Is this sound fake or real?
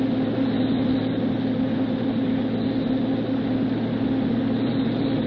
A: real